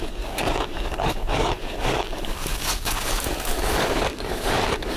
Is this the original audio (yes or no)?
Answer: no